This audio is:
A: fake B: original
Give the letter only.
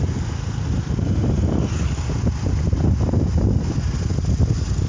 B